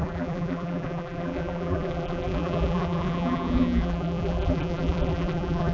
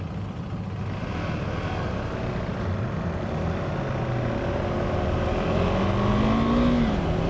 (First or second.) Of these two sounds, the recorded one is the second